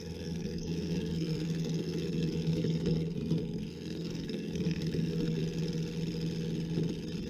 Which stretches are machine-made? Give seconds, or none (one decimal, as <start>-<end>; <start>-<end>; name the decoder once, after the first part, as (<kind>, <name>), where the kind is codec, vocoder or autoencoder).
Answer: 0.0-5.4 (codec, SNAC)